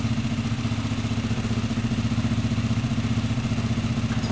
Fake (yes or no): no